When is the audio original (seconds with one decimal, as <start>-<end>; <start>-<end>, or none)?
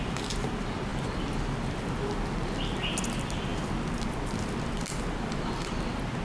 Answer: 0.0-6.2